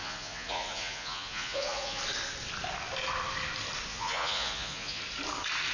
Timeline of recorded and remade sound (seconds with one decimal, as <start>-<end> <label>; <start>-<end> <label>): 0.0-2.0 remade; 2.0-3.9 recorded; 3.9-5.0 remade; 5.0-5.7 recorded